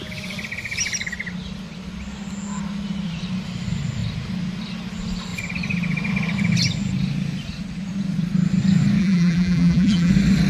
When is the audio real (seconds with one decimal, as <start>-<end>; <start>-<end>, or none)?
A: 0.0-9.0; 10.1-10.5